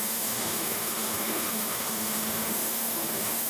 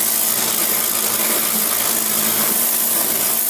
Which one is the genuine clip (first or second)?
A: second